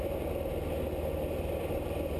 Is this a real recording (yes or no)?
yes